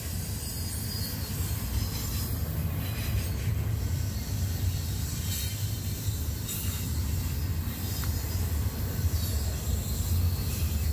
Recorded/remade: recorded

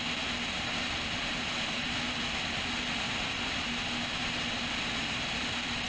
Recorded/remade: recorded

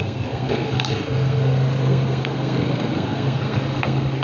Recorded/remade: remade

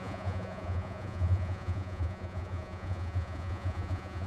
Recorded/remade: remade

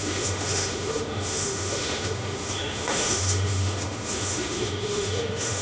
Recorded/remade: remade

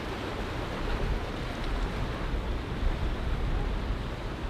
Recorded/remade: recorded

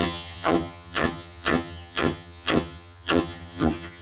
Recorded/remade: remade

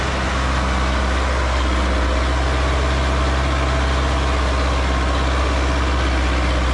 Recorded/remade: recorded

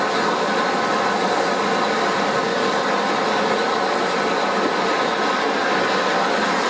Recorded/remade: recorded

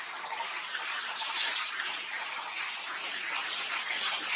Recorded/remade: recorded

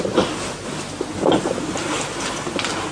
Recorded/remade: recorded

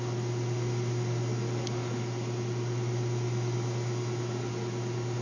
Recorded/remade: recorded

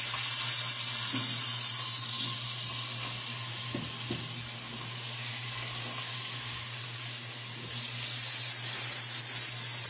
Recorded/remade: recorded